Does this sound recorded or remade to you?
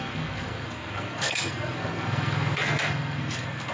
remade